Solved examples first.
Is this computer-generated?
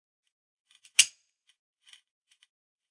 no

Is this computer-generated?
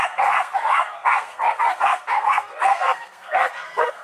yes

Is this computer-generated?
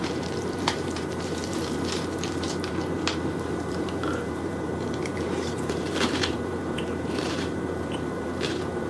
yes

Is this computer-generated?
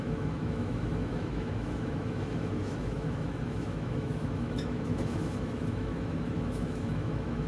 yes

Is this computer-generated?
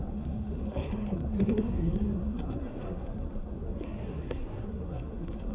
yes